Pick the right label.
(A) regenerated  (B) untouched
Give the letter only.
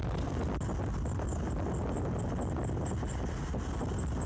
B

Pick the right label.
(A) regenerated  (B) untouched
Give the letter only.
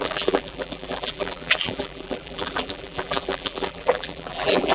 A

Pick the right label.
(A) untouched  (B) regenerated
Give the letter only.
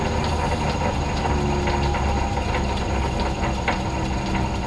A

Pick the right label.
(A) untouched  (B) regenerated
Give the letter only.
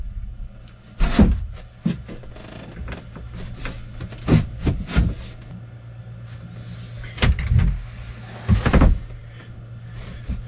A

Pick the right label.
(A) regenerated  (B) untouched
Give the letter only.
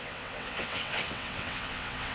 A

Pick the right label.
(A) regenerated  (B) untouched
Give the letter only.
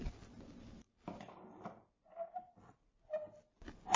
B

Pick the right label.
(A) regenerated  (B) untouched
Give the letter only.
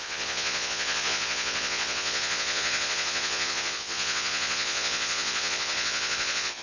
A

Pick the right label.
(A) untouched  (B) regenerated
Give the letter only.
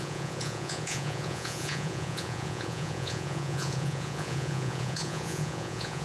B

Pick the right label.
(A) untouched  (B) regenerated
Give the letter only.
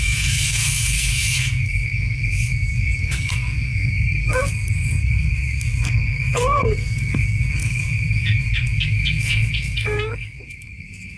B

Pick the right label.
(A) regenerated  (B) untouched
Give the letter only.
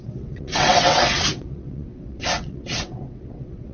A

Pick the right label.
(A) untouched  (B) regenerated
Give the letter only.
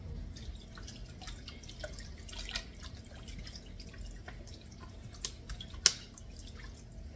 A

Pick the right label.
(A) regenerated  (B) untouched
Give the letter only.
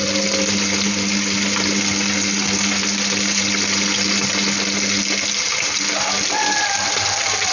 B